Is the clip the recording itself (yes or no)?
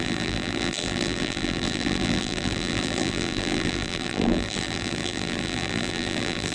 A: no